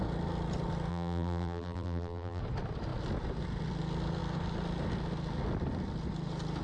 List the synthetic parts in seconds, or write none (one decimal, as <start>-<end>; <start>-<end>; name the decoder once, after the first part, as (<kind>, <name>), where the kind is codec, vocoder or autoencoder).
0.9-2.4 (vocoder, BigVGAN v2)